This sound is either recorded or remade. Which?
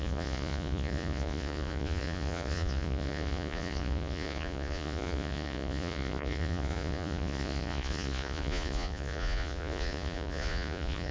remade